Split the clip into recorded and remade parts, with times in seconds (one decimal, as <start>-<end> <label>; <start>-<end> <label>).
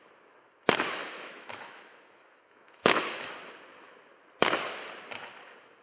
0.0-1.0 recorded; 1.0-3.3 remade; 3.3-5.8 recorded